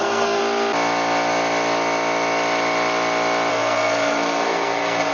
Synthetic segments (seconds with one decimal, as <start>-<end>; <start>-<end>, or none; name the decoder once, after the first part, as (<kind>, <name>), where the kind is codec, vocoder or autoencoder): 0.0-0.4 (codec, SNAC); 3.5-5.1